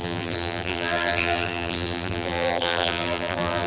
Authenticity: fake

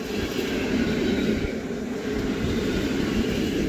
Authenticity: real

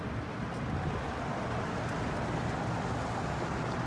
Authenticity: real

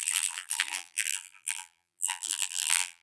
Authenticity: fake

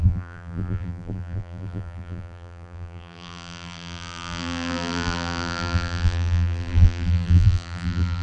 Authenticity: fake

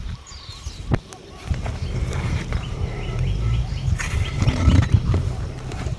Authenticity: fake